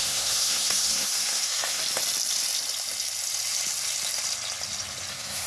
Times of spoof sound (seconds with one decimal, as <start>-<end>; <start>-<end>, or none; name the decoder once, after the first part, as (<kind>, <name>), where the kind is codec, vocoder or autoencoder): 0.0-1.8 (codec, SNAC); 5.1-5.5